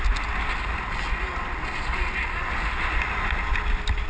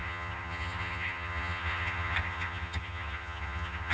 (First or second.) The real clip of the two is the first